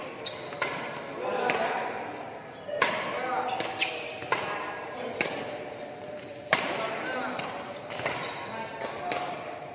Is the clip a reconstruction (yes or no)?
no